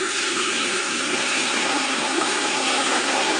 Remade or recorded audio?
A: remade